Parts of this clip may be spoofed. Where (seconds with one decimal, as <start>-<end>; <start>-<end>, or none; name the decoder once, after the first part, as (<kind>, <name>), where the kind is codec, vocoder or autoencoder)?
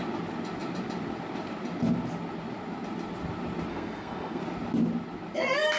3.7-4.4 (codec, SNAC)